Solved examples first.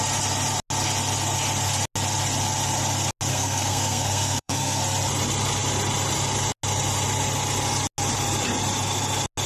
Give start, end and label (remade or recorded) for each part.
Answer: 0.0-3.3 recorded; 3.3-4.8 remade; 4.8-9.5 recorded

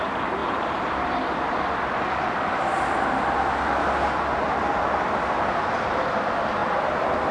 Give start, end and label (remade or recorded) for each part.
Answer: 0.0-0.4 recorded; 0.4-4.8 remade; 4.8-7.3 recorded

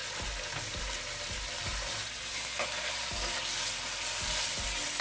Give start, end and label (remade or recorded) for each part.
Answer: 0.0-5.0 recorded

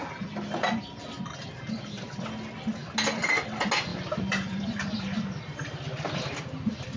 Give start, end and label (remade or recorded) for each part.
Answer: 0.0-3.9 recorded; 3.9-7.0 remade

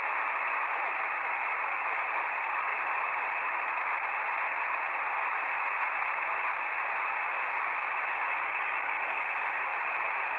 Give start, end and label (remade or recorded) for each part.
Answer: 0.0-2.7 recorded; 2.7-4.4 remade; 4.4-10.4 recorded